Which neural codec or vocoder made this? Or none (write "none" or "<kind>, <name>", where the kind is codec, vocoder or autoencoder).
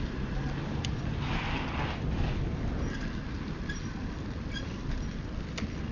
none